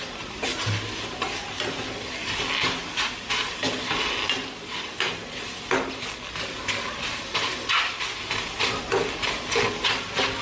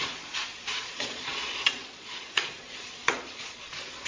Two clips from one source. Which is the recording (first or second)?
first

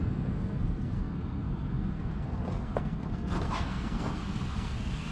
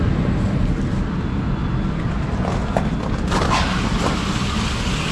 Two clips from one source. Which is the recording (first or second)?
second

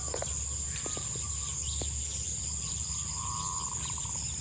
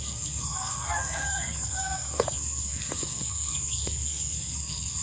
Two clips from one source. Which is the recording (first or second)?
first